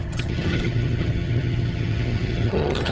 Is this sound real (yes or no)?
no